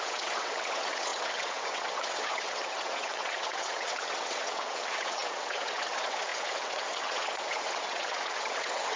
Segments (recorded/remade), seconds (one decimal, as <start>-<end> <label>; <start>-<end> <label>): 0.0-9.0 remade

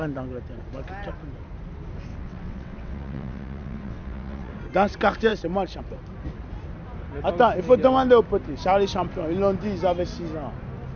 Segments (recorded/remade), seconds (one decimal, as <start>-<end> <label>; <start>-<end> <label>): 0.0-2.1 recorded; 2.1-4.5 remade; 4.5-11.0 recorded

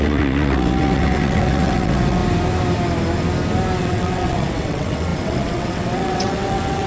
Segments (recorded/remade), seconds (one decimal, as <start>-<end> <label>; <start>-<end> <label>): 0.0-2.2 remade; 2.2-3.8 recorded; 3.8-6.9 remade

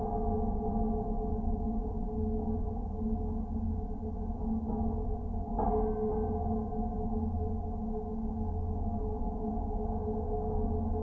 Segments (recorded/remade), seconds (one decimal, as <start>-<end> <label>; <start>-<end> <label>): 0.0-11.0 recorded

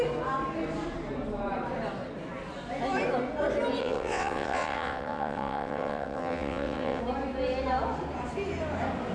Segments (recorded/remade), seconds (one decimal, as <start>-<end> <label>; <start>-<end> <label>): 0.0-3.8 recorded; 3.8-7.0 remade; 7.0-9.1 recorded

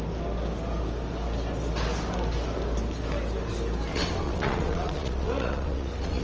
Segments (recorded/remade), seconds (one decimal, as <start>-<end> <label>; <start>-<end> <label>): 0.0-3.9 recorded; 3.9-6.2 remade

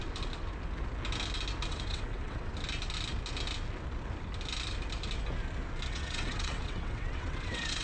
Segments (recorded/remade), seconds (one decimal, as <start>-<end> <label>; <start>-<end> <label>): 0.0-1.7 recorded; 1.7-2.5 remade; 2.5-5.9 recorded; 5.9-7.8 remade